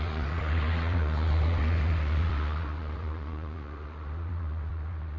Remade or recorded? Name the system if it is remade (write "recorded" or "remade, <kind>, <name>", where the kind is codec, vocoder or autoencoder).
remade, vocoder, WaveNeXt